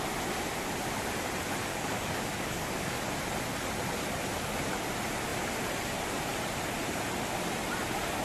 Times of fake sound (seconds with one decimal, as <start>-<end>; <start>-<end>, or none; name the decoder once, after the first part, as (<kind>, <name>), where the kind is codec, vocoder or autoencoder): 1.7-3.0 (codec, DAC)